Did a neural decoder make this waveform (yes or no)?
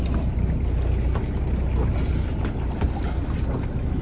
no